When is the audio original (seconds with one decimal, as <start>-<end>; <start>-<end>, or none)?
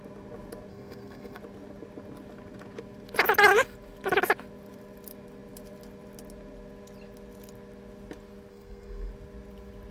0.0-0.7; 1.4-8.5; 9.1-9.9